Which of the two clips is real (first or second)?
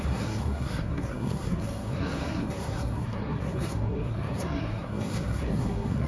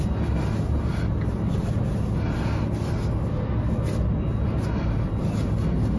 second